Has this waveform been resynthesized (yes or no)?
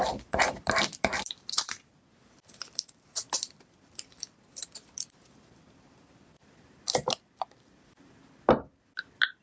yes